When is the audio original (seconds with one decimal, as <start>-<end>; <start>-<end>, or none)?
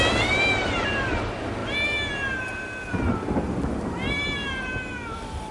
0.0-5.5